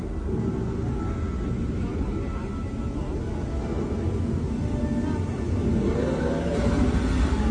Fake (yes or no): no